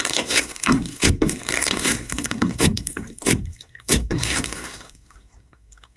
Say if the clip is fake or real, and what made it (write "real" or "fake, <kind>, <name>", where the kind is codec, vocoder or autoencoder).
fake, codec, SNAC